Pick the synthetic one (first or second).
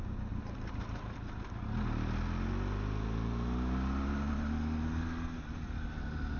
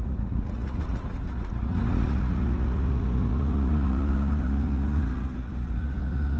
second